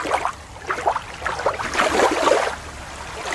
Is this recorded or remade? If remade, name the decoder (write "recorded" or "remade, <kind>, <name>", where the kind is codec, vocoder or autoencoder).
recorded